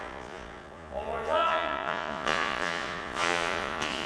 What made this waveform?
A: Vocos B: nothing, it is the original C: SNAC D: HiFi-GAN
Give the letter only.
A